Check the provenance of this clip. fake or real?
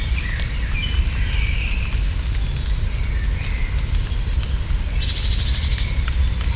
real